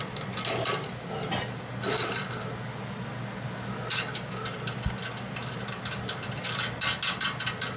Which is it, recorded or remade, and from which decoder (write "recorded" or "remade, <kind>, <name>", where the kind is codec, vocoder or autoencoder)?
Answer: recorded